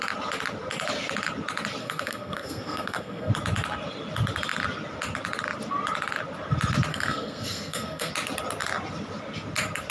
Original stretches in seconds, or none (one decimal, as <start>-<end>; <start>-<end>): 0.0-1.8; 3.3-6.9; 8.1-9.9